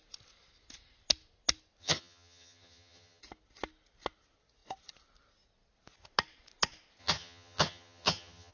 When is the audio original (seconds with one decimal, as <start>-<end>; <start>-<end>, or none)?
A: 0.0-1.8; 3.2-7.0